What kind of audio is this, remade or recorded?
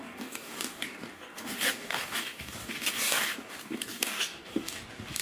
remade